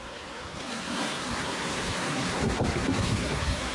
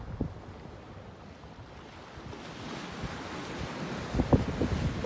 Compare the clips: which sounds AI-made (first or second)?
first